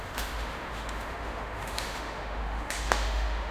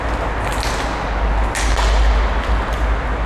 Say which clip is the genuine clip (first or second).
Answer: second